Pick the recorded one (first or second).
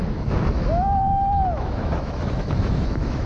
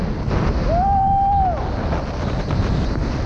second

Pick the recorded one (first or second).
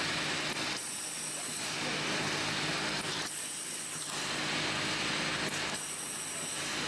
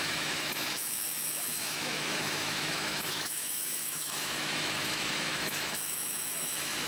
first